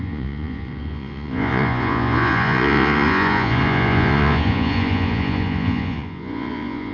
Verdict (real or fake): fake